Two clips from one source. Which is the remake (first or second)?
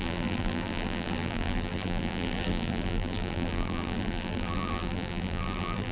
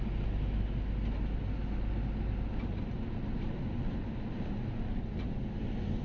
first